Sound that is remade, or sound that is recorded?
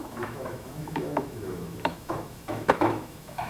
remade